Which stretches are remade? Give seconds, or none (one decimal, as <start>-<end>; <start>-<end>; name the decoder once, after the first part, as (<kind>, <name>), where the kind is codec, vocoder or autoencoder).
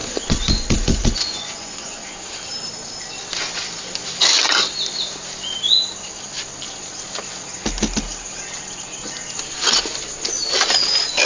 0.0-2.2 (vocoder, Vocos)